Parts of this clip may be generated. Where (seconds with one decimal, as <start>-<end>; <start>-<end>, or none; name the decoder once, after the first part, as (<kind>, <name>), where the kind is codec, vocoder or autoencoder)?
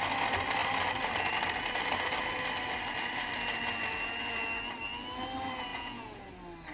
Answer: 5.7-6.3 (vocoder, Vocos)